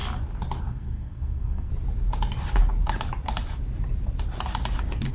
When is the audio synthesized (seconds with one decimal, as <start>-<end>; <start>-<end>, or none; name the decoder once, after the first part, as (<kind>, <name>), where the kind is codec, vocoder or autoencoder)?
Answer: 0.6-1.7 (codec, SNAC)